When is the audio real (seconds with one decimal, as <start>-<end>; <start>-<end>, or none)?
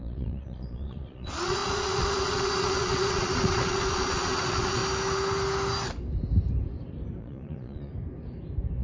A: 4.8-7.2; 7.9-8.8